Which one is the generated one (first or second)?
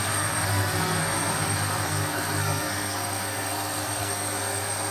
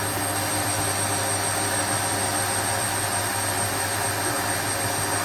first